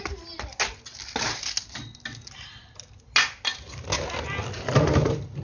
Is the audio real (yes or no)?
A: yes